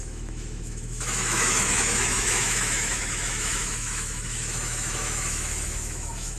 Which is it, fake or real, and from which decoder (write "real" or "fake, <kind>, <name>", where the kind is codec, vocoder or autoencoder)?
fake, autoencoder, DAC-VAE